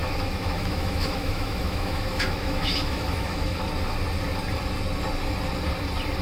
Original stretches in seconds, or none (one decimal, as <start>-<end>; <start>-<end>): 3.7-6.2